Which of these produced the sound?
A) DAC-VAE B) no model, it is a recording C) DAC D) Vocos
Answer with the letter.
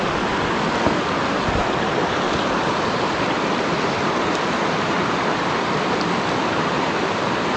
B